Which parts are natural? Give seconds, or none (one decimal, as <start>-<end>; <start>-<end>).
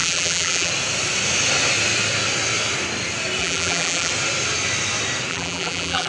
0.7-3.4; 4.1-5.3